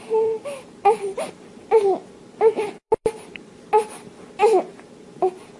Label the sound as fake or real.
fake